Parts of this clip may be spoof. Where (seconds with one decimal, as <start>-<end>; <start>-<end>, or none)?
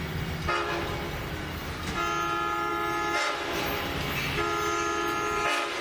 none